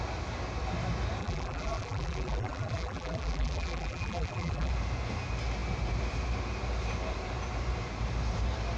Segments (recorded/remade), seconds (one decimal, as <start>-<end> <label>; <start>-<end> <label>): 0.0-1.2 recorded; 1.2-4.7 remade; 4.7-8.8 recorded